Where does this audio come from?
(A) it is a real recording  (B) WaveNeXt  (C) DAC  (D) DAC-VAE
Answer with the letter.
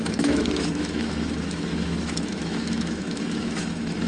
D